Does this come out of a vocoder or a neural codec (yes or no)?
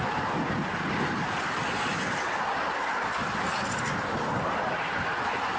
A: no